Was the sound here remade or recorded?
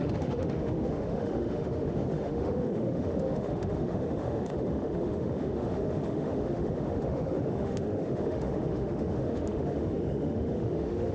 remade